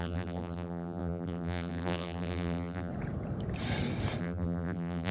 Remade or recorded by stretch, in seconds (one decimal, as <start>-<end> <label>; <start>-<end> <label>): 0.0-2.9 remade; 2.9-4.2 recorded; 4.2-5.1 remade